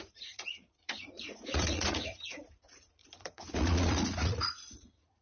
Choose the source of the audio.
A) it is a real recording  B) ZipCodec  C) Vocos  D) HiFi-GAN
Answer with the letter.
C